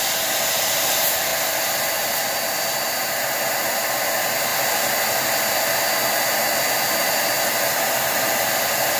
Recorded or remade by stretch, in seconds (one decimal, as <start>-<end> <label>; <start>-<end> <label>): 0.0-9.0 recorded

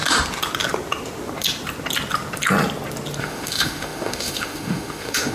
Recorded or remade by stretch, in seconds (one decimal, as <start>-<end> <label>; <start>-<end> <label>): 0.0-3.2 recorded; 3.2-5.3 remade

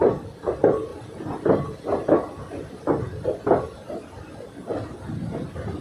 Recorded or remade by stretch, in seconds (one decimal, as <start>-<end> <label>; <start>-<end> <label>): 0.0-0.9 recorded; 0.9-2.9 remade; 2.9-5.8 recorded

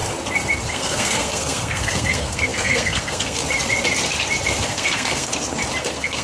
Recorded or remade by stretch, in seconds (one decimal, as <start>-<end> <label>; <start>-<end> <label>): 0.0-0.7 recorded; 0.7-3.4 remade; 3.4-4.7 recorded; 4.7-5.3 remade; 5.3-5.8 recorded; 5.8-6.2 remade

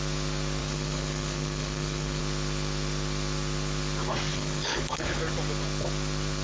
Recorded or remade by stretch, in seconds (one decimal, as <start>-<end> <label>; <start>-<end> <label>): 0.0-0.6 recorded; 0.6-2.2 remade; 2.2-4.3 recorded; 4.3-5.2 remade; 5.2-6.4 recorded

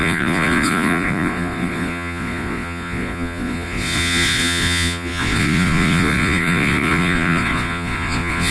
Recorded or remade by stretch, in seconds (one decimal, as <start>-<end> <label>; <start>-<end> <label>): 0.0-8.5 remade

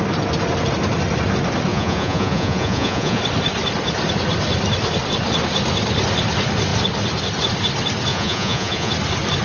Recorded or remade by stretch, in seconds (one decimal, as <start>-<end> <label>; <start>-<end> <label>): 0.0-1.7 recorded; 1.7-3.2 remade; 3.2-8.1 recorded; 8.1-8.9 remade; 8.9-9.4 recorded